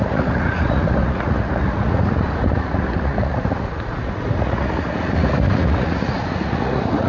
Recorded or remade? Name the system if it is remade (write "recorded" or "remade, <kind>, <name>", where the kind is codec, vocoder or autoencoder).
remade, vocoder, Vocos